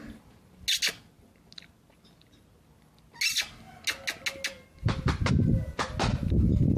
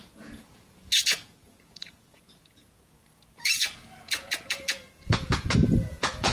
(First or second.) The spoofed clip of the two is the second